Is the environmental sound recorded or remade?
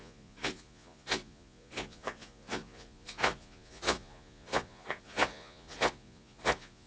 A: remade